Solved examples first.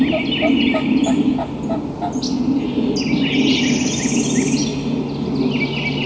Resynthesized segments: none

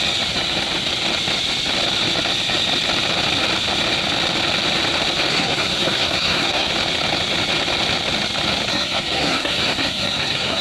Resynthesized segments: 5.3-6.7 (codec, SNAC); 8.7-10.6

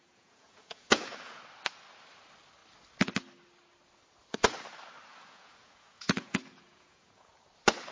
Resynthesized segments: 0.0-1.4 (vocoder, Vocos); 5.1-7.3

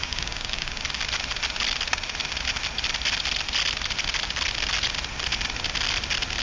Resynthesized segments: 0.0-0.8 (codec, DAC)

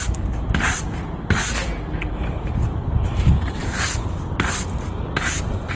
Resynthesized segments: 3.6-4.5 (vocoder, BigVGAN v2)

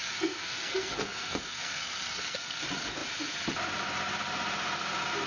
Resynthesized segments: 0.0-2.6 (codec, SNAC)